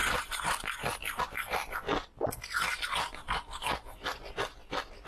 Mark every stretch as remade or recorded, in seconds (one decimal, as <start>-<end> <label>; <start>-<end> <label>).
0.0-1.2 remade; 1.2-5.1 recorded

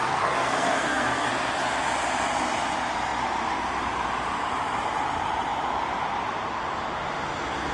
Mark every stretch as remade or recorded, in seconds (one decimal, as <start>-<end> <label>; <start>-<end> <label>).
0.0-1.3 remade; 1.3-7.7 recorded

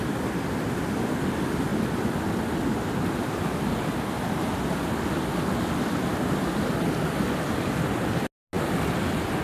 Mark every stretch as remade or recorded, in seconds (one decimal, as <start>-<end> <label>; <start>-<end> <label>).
0.0-9.4 recorded

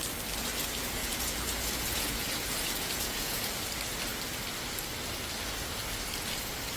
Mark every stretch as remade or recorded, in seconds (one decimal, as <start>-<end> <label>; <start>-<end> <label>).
0.0-1.0 recorded; 1.0-3.5 remade; 3.5-6.8 recorded

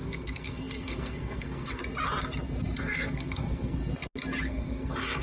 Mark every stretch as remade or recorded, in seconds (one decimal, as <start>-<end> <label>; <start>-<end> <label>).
0.0-1.8 remade; 1.8-2.8 recorded; 2.8-3.8 remade; 3.8-4.4 recorded; 4.4-5.2 remade

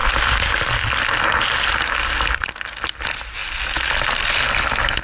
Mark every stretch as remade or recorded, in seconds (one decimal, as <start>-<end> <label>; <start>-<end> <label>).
0.0-5.0 recorded

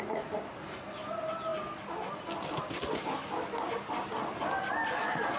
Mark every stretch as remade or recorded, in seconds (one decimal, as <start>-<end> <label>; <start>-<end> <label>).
0.0-5.4 recorded